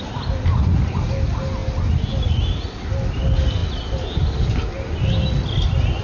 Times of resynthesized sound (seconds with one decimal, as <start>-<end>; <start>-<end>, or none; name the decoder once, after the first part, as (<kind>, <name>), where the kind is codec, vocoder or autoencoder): none